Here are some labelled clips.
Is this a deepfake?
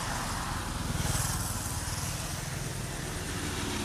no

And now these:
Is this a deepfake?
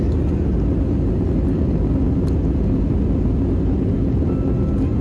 no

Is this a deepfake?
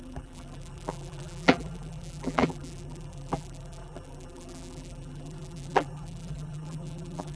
yes